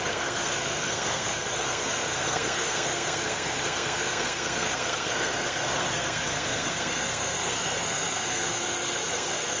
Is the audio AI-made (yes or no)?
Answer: yes